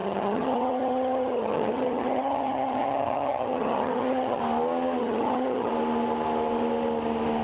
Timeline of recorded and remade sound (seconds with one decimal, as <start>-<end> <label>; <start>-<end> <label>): 0.0-4.4 remade; 4.4-5.0 recorded; 5.0-5.7 remade; 5.7-7.4 recorded